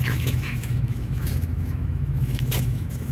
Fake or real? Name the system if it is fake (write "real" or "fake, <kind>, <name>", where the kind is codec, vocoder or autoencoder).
fake, autoencoder, DAC-VAE